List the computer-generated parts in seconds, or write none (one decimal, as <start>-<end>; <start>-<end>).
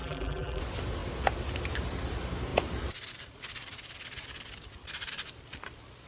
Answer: 0.0-0.6